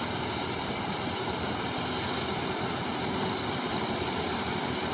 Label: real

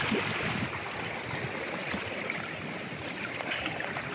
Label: real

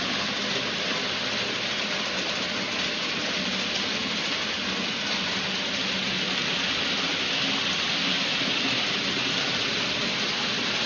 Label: real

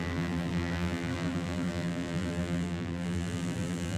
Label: fake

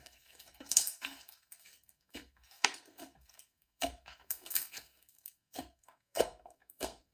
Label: fake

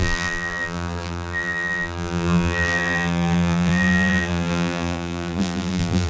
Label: fake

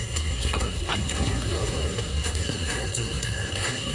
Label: fake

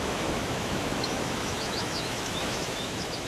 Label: fake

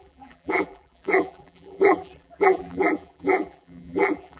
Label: fake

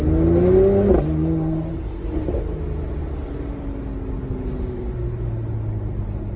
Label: real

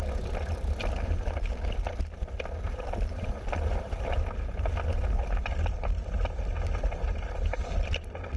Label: real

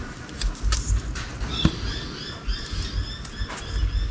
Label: real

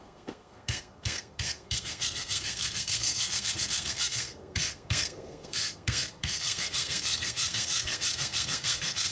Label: fake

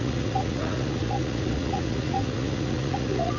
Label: fake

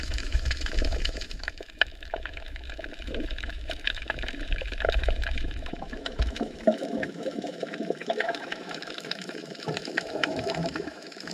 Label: fake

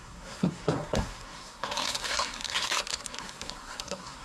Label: fake